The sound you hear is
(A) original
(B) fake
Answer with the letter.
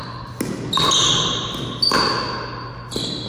A